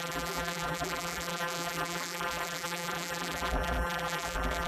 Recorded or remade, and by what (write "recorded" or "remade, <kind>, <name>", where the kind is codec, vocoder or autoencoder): remade, vocoder, BigVGAN v2